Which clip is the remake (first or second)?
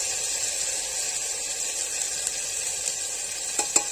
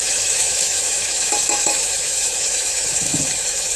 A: second